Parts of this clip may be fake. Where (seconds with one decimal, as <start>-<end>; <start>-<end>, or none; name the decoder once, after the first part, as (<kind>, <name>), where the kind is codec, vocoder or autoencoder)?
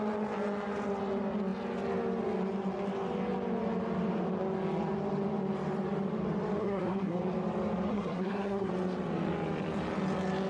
6.6-7.2 (codec, SNAC); 7.9-8.7